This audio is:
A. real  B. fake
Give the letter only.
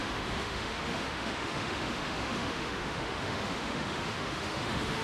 B